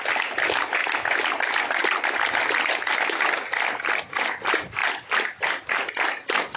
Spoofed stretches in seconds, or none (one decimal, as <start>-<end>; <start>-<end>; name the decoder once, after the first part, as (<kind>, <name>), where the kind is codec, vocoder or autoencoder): none